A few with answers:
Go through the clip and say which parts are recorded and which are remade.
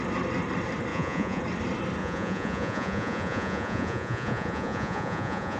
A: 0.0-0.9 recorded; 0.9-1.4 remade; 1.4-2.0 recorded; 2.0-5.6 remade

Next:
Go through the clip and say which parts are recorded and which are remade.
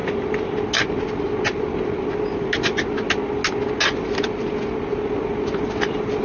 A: 0.0-6.2 recorded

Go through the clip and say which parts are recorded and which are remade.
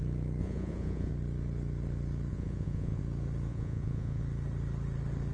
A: 0.0-0.4 recorded; 0.4-1.1 remade; 1.1-2.3 recorded; 2.3-3.0 remade; 3.0-3.5 recorded; 3.5-4.2 remade; 4.2-5.3 recorded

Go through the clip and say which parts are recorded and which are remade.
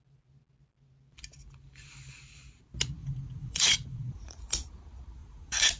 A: 0.0-3.0 recorded; 3.0-4.4 remade; 4.4-5.2 recorded; 5.2-5.8 remade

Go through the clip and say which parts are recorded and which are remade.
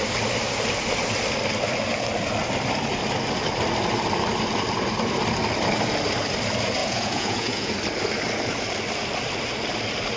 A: 0.0-6.8 recorded; 6.8-7.7 remade; 7.7-10.2 recorded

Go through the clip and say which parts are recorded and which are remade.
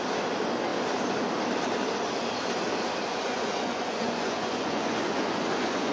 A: 0.0-3.1 recorded; 3.1-5.9 remade